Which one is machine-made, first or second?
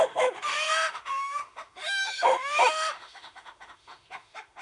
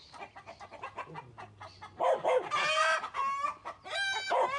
first